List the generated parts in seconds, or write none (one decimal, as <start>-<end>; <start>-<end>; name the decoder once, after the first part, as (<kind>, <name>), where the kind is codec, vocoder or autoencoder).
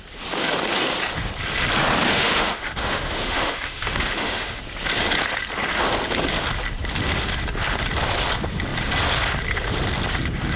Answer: 2.1-4.6 (autoencoder, DAC-VAE)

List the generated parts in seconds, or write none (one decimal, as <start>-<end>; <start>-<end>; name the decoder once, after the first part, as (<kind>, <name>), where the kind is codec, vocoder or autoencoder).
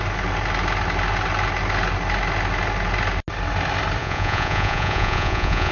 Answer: 4.0-5.7 (vocoder, Vocos)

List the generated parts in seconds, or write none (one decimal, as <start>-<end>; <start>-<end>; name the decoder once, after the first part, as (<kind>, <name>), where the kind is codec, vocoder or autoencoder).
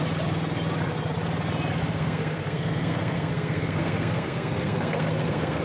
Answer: 1.8-5.6 (codec, SNAC)